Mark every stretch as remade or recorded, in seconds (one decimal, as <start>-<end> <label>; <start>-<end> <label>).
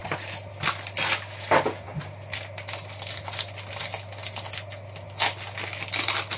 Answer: 0.0-6.4 recorded